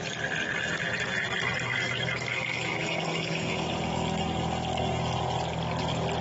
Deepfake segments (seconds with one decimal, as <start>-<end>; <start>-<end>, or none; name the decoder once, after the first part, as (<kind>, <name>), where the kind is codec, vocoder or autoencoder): 1.7-3.7 (autoencoder, DAC-VAE)